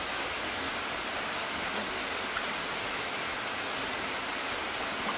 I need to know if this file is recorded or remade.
recorded